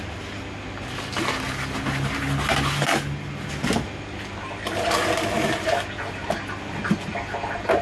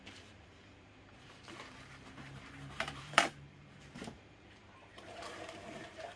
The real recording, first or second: first